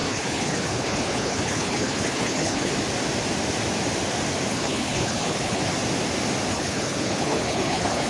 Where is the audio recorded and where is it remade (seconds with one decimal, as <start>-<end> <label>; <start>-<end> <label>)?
0.0-2.7 remade; 2.7-4.5 recorded; 4.5-5.6 remade; 5.6-6.5 recorded; 6.5-8.1 remade